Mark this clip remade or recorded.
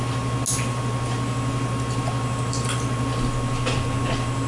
recorded